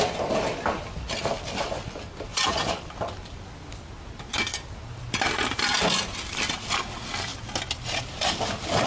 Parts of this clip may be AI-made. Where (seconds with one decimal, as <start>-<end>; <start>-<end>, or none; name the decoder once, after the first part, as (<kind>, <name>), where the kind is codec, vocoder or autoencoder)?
2.3-6.8 (vocoder, BigVGAN v2)